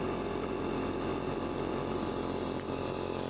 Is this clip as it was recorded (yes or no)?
yes